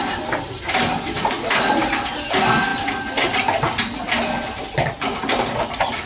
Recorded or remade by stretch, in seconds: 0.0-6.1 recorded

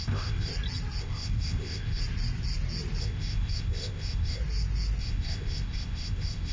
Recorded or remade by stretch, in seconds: 0.0-0.5 remade; 0.5-1.0 recorded; 1.0-2.0 remade; 2.0-3.0 recorded; 3.0-4.4 remade; 4.4-5.0 recorded; 5.0-6.5 remade